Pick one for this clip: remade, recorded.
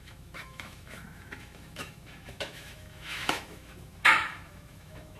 remade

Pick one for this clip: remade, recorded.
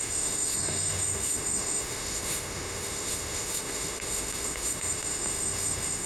remade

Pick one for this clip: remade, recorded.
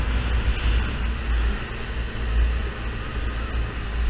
recorded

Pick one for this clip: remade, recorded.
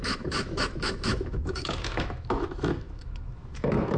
remade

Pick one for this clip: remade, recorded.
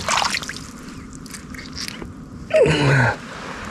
recorded